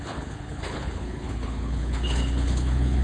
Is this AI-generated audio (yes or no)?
yes